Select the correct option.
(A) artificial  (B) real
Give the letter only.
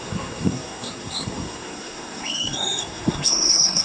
A